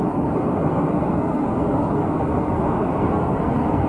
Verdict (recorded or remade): remade